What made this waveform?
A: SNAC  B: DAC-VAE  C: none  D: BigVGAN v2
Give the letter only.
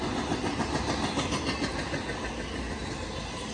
C